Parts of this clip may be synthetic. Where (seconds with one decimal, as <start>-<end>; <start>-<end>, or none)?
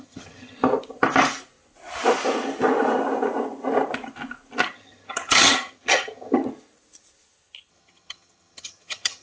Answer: 0.0-0.6; 4.7-6.4; 7.7-9.2